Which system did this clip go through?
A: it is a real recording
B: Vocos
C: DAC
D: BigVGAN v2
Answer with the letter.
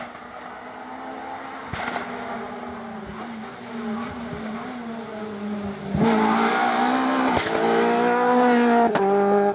A